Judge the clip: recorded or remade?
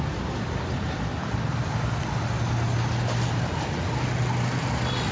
recorded